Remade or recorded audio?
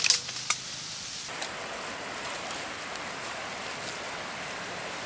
recorded